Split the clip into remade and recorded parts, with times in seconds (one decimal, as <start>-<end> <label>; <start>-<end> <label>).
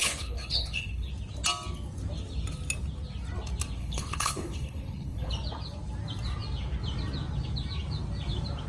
0.0-1.1 remade; 1.1-3.8 recorded; 3.8-5.3 remade; 5.3-8.7 recorded